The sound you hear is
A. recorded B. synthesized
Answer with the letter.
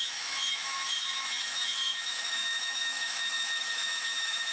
B